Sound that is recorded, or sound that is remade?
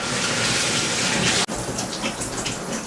recorded